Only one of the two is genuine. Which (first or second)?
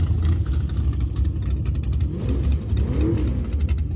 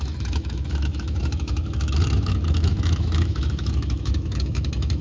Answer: first